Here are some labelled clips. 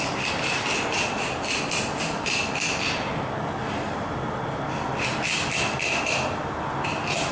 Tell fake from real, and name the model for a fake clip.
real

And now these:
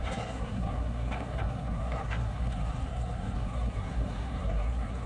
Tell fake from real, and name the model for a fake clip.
fake, codec, SNAC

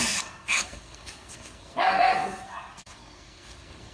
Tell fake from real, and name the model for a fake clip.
fake, codec, SNAC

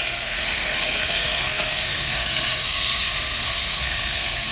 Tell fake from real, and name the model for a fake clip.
fake, codec, SNAC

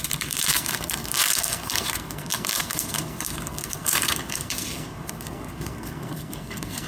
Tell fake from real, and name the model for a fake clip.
fake, codec, SNAC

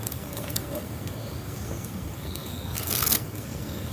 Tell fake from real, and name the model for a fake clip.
fake, codec, SNAC